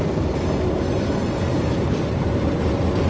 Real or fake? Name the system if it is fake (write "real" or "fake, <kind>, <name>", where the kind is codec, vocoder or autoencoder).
real